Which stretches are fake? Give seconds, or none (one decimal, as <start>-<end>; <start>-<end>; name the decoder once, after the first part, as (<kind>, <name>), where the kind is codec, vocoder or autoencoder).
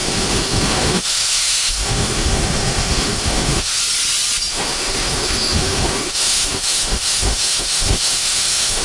0.0-3.8 (autoencoder, DAC-VAE); 4.5-8.8